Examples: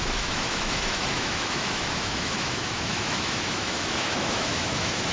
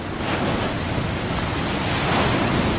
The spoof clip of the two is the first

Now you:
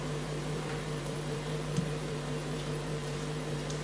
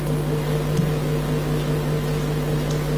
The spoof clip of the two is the first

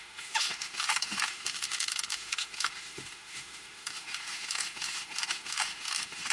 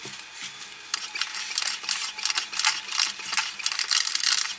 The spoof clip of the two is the first